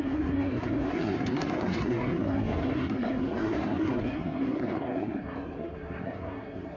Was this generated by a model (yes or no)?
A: yes